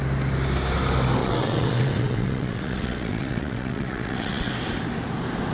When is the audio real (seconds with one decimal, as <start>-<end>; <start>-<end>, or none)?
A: 0.0-1.2; 4.5-5.5